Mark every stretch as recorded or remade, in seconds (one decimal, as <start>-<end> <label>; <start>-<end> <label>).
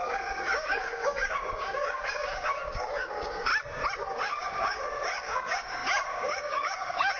0.0-3.5 remade; 3.5-4.1 recorded; 4.1-7.2 remade